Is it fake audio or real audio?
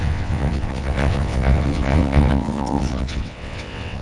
fake